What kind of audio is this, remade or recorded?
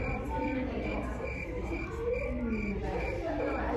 recorded